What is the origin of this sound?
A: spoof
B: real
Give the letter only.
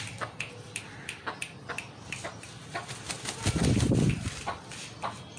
B